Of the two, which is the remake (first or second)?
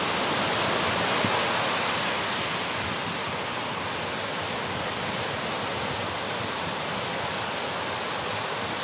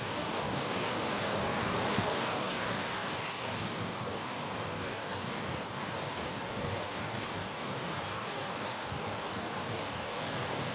second